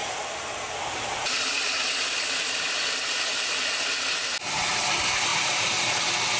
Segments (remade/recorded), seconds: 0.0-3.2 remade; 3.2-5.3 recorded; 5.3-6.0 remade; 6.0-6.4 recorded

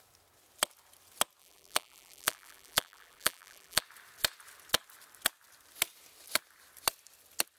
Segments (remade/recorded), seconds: 0.0-1.4 recorded; 1.4-3.8 remade; 3.8-7.6 recorded

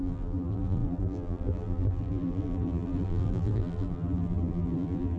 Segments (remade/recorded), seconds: 0.0-5.2 remade